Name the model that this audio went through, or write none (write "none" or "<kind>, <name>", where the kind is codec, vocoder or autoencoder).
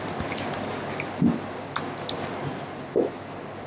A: none